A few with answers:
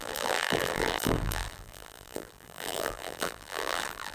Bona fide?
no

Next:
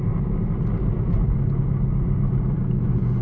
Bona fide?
yes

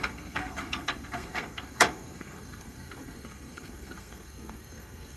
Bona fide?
no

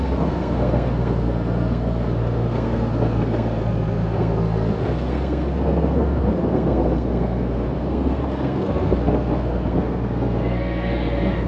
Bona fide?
no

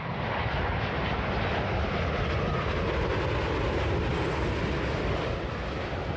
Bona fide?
yes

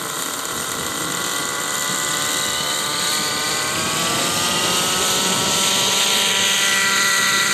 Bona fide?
no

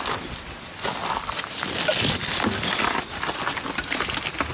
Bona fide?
yes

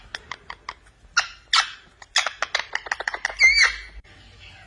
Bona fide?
yes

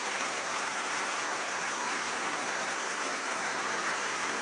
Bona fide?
no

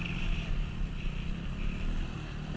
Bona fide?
yes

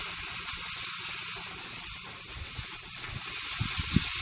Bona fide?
yes